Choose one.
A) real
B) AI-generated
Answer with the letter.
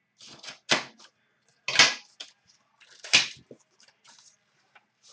A